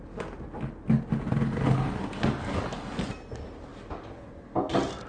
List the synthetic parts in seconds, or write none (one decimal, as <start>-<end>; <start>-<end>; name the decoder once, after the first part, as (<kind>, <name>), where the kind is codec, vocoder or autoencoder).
none

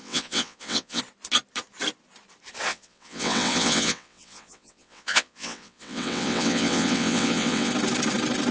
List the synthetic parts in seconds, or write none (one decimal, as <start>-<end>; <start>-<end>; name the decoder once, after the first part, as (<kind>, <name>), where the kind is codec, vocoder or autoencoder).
0.0-1.0 (vocoder, WaveNeXt); 2.7-7.7

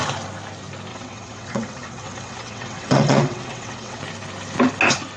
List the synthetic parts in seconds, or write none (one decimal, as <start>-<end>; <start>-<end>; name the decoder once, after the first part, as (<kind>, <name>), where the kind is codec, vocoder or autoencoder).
0.9-4.0 (vocoder, WaveNeXt)

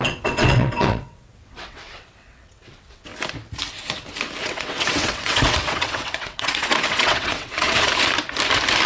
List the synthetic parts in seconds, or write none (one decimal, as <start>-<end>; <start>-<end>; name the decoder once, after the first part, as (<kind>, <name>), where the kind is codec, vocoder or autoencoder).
0.0-3.1 (vocoder, WaveNeXt); 4.4-7.9

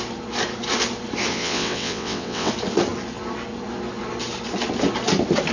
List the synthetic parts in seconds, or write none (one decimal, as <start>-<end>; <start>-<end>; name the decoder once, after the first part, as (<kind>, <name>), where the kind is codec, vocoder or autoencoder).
1.3-2.5 (vocoder, WaveNeXt)

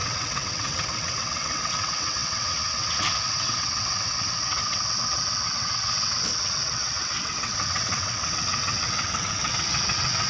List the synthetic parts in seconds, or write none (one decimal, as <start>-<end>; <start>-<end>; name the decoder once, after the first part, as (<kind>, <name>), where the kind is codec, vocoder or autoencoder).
0.0-10.3 (vocoder, WaveNeXt)

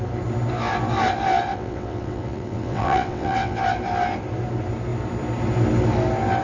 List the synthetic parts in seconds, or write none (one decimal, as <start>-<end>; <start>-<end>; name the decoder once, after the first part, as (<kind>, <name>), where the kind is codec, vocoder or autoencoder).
1.5-3.6 (vocoder, WaveNeXt)

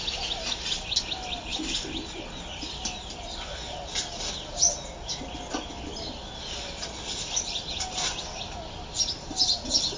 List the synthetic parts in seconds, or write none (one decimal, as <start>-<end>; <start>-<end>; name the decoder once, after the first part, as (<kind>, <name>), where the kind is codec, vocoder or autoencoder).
none